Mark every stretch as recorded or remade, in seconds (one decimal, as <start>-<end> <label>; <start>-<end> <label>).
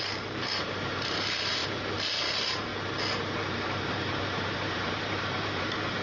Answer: 0.0-2.7 remade; 2.7-3.9 recorded; 3.9-6.0 remade